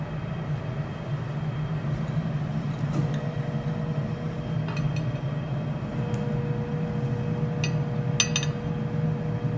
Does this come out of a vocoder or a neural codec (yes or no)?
no